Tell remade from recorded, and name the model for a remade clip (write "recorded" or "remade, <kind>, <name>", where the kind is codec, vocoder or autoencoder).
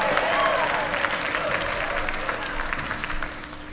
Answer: recorded